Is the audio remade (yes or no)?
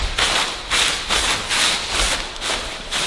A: no